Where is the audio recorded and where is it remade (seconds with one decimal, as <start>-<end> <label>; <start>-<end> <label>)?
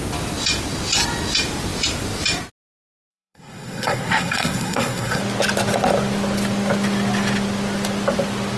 0.0-3.1 recorded; 3.1-5.2 remade; 5.2-8.6 recorded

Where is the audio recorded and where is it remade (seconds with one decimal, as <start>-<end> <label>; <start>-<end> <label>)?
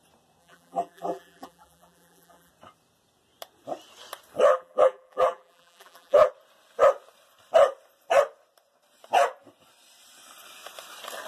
0.0-0.4 recorded; 0.4-2.5 remade; 2.5-4.5 recorded; 4.5-6.3 remade; 6.3-11.3 recorded